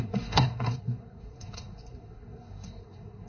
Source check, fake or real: fake